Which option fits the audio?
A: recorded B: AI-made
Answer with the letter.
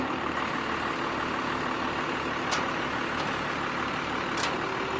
A